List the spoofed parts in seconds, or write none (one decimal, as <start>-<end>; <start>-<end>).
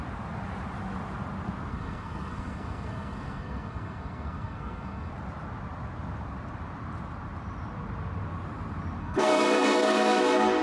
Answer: 1.7-5.1; 9.0-10.2